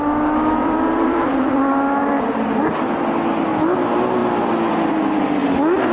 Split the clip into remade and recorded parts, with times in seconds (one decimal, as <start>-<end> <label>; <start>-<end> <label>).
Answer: 0.0-0.6 recorded; 0.6-1.3 remade; 1.3-4.2 recorded; 4.2-4.9 remade; 4.9-5.9 recorded